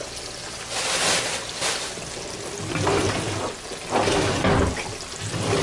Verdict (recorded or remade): recorded